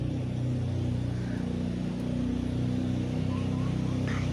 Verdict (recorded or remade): recorded